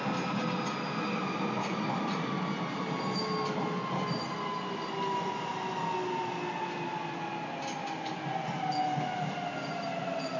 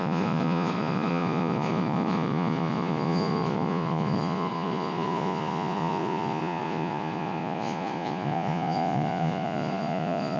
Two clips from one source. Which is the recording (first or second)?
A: first